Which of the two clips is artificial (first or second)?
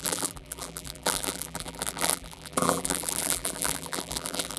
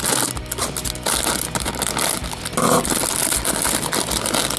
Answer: first